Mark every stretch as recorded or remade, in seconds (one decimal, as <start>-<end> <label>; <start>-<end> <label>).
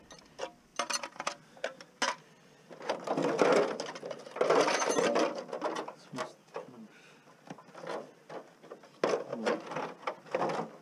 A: 0.0-10.8 recorded